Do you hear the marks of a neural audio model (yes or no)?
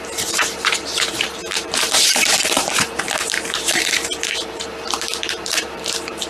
yes